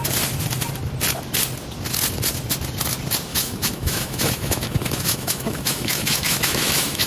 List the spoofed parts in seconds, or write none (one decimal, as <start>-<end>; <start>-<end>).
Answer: 3.3-7.1